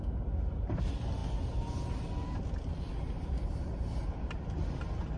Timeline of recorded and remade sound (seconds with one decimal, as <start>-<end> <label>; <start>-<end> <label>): 0.0-5.2 recorded